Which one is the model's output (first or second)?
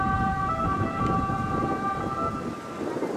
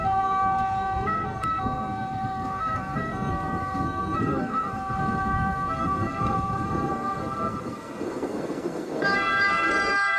second